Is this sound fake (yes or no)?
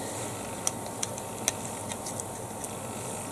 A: no